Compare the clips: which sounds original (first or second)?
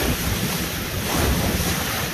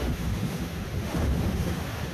first